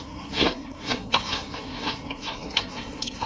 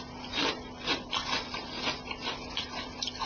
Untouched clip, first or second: second